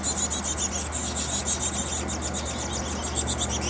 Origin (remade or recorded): recorded